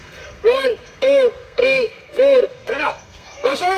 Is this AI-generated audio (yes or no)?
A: yes